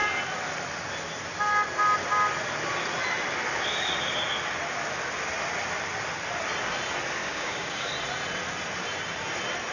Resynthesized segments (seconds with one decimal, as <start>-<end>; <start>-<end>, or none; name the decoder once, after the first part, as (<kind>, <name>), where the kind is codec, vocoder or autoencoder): 7.2-7.9 (codec, DAC)